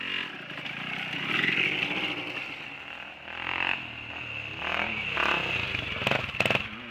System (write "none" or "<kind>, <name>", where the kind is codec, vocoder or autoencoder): none